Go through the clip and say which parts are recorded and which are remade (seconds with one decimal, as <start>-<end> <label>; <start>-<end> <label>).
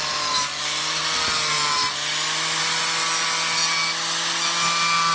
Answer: 0.0-5.1 recorded